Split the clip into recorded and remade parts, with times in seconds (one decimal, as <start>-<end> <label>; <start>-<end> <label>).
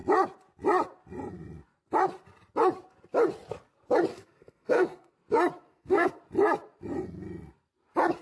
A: 0.0-4.1 recorded; 4.1-5.1 remade; 5.1-5.7 recorded; 5.7-6.2 remade; 6.2-8.2 recorded